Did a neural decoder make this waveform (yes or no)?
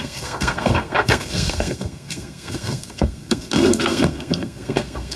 yes